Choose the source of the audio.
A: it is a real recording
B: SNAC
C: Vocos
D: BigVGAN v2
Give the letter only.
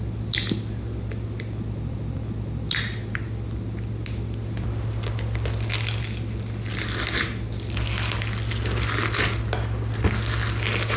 A